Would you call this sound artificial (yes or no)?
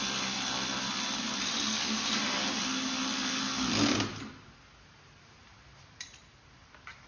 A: no